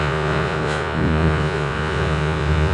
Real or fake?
fake